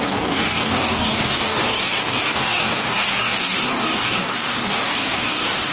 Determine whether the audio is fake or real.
fake